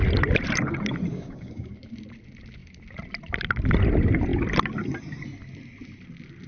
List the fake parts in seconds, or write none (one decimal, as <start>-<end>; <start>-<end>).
1.1-1.7